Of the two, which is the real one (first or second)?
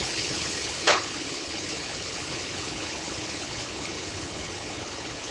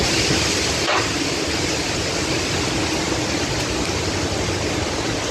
second